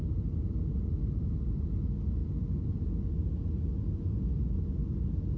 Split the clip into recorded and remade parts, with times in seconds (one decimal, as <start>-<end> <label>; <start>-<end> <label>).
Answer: 0.0-5.4 recorded

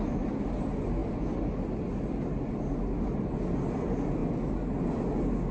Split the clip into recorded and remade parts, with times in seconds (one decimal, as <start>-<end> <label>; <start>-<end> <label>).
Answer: 0.0-5.5 recorded

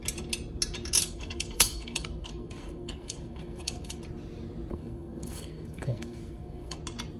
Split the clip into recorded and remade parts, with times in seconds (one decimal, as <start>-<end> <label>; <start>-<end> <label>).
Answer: 0.0-1.0 recorded; 1.0-4.0 remade; 4.0-4.7 recorded; 4.7-6.8 remade; 6.8-7.2 recorded

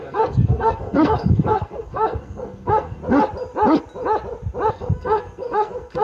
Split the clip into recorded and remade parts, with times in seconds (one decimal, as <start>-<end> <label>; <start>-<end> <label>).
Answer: 0.0-3.0 remade; 3.0-4.7 recorded; 4.7-6.0 remade

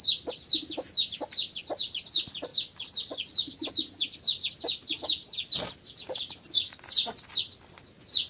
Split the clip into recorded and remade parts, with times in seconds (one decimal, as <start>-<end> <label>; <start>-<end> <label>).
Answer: 0.0-8.3 recorded

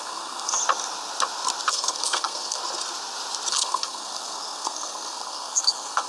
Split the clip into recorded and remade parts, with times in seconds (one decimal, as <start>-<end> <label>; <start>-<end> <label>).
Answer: 0.0-0.6 remade; 0.6-1.7 recorded; 1.7-2.6 remade; 2.6-3.5 recorded; 3.5-6.1 remade

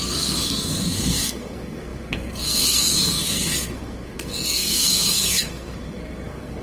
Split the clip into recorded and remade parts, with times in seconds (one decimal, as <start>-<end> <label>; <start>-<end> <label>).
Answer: 0.0-6.6 remade